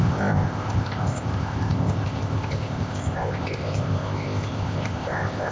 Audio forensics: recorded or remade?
remade